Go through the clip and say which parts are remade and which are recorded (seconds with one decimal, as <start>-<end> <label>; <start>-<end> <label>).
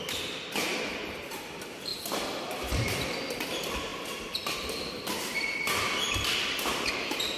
0.0-7.4 recorded